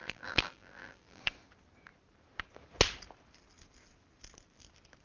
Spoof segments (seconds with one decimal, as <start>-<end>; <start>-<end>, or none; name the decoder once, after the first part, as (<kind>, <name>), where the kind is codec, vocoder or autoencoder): 0.0-1.2 (vocoder, BigVGAN v2)